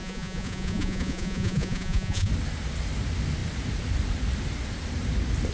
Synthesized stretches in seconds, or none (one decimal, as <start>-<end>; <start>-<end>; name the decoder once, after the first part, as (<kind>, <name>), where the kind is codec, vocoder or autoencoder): 0.0-2.3 (vocoder, Vocos)